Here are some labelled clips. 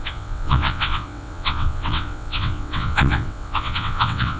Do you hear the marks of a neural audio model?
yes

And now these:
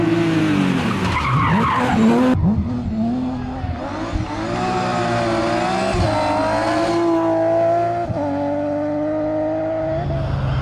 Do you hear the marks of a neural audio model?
no